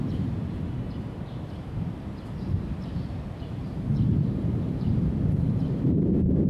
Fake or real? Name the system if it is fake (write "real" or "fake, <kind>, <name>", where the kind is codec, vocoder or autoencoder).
fake, vocoder, BigVGAN v2